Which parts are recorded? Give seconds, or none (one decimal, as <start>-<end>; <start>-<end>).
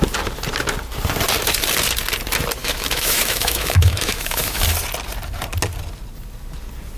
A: 0.0-2.6; 4.6-7.0